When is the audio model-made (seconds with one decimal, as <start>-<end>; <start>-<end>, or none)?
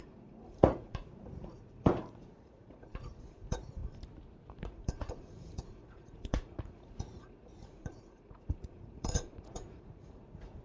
0.0-3.8; 4.6-10.6